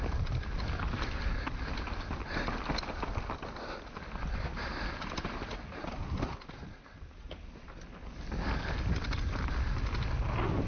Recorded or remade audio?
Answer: recorded